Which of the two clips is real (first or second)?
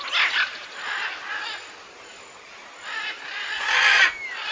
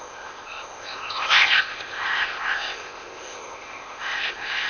first